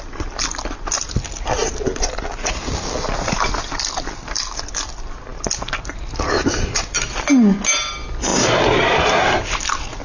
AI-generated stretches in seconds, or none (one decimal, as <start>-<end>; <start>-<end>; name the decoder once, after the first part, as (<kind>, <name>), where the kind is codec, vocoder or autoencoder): none